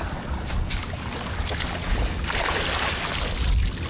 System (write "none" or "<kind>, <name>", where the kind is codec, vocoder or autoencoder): none